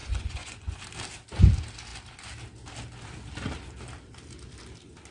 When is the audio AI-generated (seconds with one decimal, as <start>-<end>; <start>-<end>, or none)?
0.0-0.8

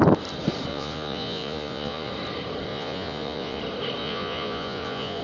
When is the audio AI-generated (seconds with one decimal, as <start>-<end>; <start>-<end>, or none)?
0.7-2.1; 2.7-3.6; 4.0-5.2